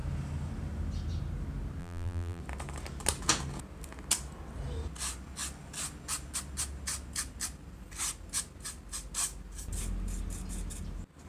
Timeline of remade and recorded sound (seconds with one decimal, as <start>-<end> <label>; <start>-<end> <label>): 0.0-1.8 recorded; 1.8-2.4 remade; 2.4-11.3 recorded